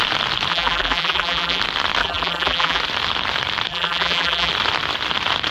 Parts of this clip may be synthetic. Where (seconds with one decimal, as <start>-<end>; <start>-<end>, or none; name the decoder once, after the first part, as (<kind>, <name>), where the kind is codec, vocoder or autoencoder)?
0.5-1.6 (vocoder, BigVGAN v2); 2.0-2.8; 3.7-4.5